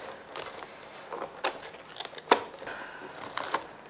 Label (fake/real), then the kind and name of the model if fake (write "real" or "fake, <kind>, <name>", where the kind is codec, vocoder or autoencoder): real